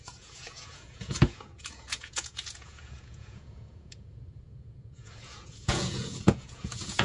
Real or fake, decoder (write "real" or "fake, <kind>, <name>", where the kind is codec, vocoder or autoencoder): fake, vocoder, Vocos